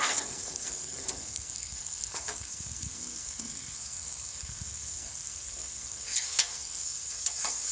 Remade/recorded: remade